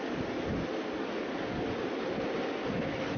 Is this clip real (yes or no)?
yes